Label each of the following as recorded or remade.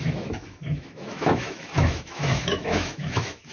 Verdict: remade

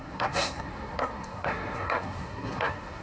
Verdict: remade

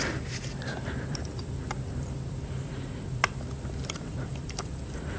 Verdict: remade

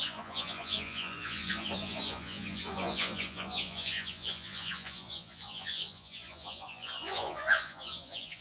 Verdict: remade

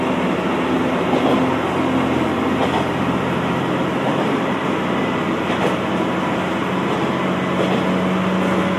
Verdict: recorded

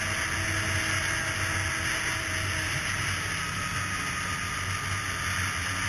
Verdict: recorded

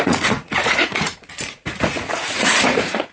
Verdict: remade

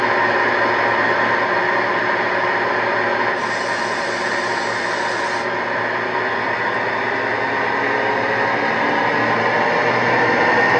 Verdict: recorded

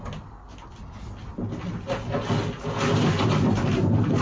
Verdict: recorded